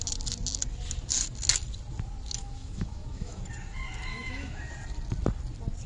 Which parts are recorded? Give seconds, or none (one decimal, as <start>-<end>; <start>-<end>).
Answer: 0.0-2.4; 3.4-4.1; 4.7-5.9